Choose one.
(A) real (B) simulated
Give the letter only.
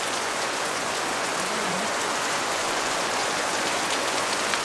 B